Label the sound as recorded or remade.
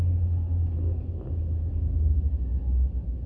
recorded